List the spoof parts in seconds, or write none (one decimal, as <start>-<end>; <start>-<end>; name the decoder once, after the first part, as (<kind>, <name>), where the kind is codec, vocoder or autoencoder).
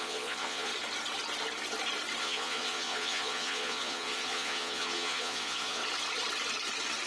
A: 0.0-0.7 (vocoder, Vocos); 2.2-5.8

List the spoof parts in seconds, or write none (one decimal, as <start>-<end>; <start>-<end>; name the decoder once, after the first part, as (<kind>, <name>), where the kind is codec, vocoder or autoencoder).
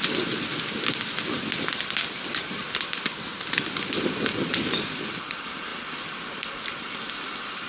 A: none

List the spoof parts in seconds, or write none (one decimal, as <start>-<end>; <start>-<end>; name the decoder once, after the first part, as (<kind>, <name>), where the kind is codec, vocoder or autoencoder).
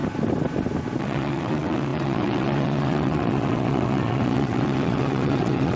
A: 1.0-5.8 (vocoder, WaveNeXt)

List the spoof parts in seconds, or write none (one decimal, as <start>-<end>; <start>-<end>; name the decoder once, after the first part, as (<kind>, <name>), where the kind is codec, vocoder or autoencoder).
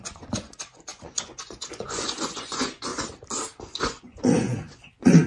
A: 0.0-2.9 (vocoder, Vocos); 3.8-5.3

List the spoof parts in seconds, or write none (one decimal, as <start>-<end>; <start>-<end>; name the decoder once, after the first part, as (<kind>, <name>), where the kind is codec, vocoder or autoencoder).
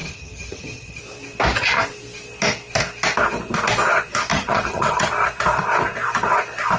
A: 0.0-1.0 (vocoder, HiFi-GAN); 4.3-5.1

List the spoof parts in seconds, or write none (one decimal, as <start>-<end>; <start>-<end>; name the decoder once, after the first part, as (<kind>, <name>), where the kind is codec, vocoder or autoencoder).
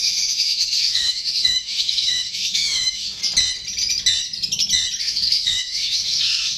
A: 0.0-3.2 (autoencoder, DAC-VAE); 5.0-6.6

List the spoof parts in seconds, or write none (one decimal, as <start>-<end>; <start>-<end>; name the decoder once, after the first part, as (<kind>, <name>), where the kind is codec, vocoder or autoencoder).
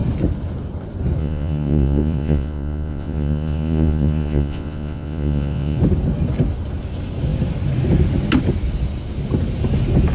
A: 1.2-5.8 (vocoder, Vocos)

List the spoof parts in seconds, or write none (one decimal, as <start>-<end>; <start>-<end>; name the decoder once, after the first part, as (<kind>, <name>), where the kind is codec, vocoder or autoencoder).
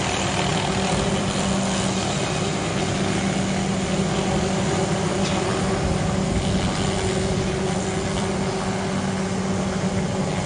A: none